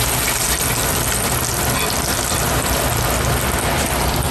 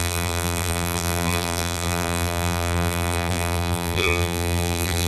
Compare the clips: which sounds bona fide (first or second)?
first